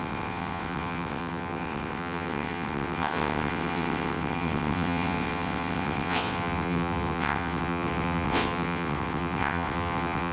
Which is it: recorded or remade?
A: remade